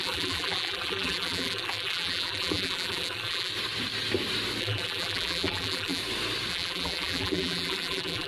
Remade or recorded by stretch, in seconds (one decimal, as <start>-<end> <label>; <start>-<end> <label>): 0.0-3.5 remade; 3.5-4.6 recorded; 4.6-6.0 remade; 6.0-6.5 recorded; 6.5-8.3 remade